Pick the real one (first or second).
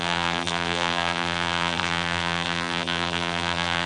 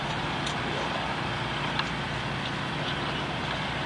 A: second